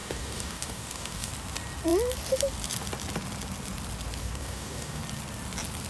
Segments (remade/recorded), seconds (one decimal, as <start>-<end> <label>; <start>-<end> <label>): 0.0-1.3 remade; 1.3-4.2 recorded; 4.2-5.0 remade; 5.0-5.9 recorded